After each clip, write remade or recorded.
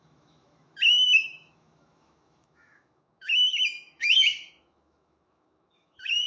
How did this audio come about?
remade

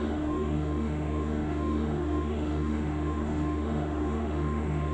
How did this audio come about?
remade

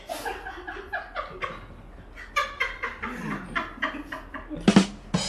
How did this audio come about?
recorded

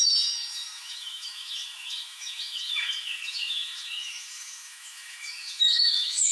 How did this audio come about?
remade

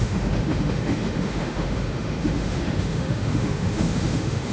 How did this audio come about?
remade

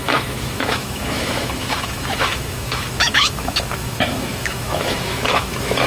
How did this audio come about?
remade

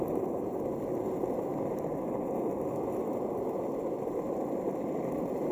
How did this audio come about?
recorded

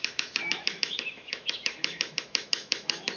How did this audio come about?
remade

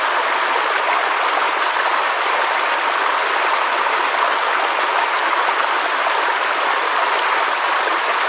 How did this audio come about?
recorded